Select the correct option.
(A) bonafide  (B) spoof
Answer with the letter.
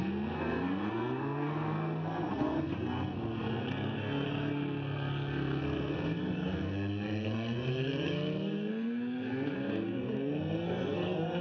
B